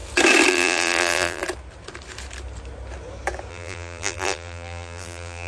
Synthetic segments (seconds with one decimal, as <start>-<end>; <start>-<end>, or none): 0.5-1.4; 3.5-5.5